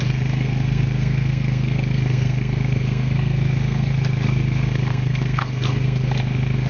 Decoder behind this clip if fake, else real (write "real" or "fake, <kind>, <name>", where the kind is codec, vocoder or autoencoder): fake, codec, SNAC